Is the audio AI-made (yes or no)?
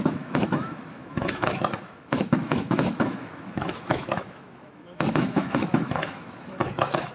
yes